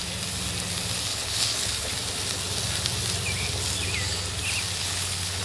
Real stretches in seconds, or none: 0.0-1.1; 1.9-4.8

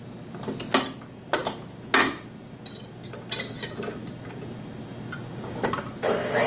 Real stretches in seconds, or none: 0.0-6.5

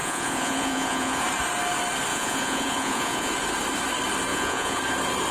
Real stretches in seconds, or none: 1.2-2.1; 3.3-4.3; 4.8-5.3

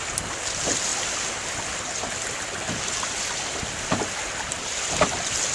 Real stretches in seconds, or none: 0.0-5.5

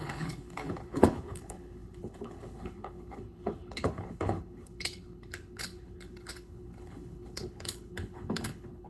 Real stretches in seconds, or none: none